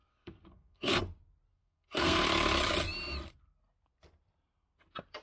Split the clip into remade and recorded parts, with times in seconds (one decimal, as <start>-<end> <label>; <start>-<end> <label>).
0.0-1.0 remade; 1.0-1.5 recorded; 1.5-2.2 remade; 2.2-5.2 recorded